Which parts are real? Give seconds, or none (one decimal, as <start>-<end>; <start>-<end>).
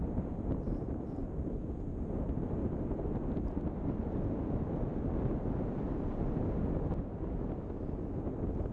0.0-8.7